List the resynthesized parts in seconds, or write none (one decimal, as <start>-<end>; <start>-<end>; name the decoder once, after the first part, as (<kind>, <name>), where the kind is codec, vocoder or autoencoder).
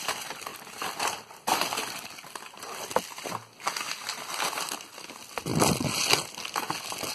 none